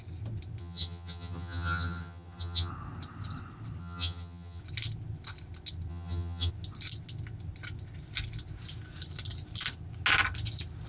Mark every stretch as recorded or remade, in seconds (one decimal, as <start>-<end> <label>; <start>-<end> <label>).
0.0-0.6 recorded; 0.6-2.7 remade; 2.7-3.8 recorded; 3.8-4.6 remade; 4.6-5.9 recorded; 5.9-6.5 remade; 6.5-10.9 recorded